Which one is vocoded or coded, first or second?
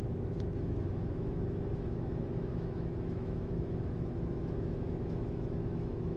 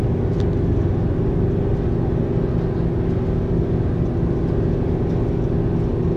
first